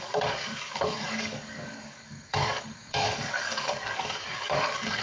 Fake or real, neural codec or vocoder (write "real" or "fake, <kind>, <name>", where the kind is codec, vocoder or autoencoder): fake, codec, DAC